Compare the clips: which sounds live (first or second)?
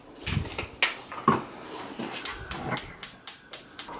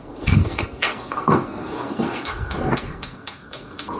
first